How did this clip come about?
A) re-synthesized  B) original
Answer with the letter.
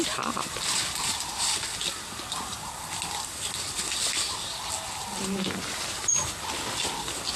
B